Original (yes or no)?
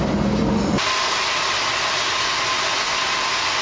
yes